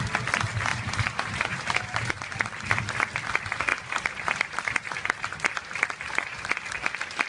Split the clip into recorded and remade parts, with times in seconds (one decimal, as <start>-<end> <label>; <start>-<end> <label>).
0.0-0.7 recorded; 0.7-2.3 remade; 2.3-3.7 recorded; 3.7-6.5 remade; 6.5-7.3 recorded